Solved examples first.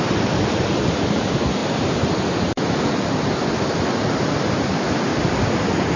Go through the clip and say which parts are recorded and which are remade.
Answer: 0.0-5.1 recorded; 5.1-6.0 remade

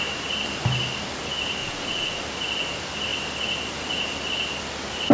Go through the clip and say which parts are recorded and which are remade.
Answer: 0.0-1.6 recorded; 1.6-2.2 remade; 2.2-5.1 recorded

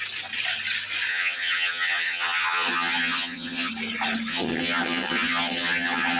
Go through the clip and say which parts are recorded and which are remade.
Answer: 0.0-1.1 recorded; 1.1-3.7 remade; 3.7-4.3 recorded; 4.3-6.2 remade

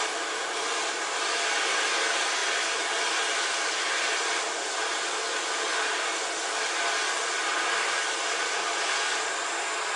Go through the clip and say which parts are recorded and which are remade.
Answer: 0.0-10.0 recorded

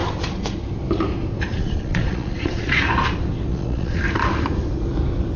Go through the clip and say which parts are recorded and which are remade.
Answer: 0.0-1.5 recorded; 1.5-2.8 remade; 2.8-3.5 recorded; 3.5-4.0 remade; 4.0-5.4 recorded

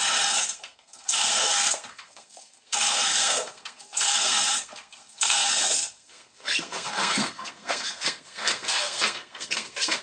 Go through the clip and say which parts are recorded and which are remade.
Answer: 0.0-10.0 remade